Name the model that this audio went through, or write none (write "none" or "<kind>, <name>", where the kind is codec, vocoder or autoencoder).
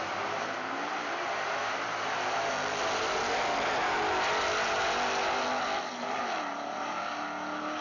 none